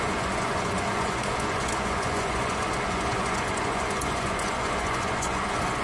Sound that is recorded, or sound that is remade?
remade